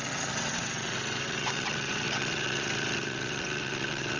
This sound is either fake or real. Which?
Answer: fake